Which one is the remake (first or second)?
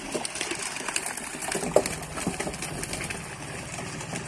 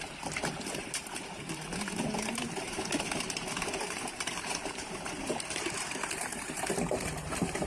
second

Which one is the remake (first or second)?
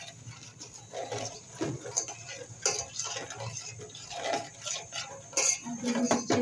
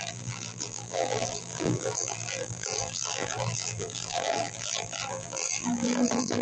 second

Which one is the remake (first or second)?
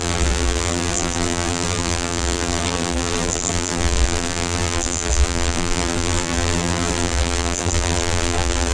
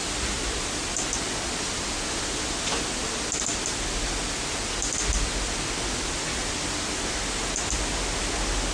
first